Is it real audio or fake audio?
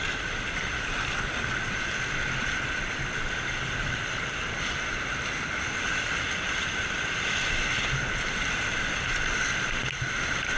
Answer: real